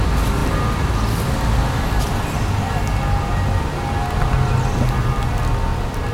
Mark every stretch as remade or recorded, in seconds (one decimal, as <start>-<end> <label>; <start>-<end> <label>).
0.0-6.1 recorded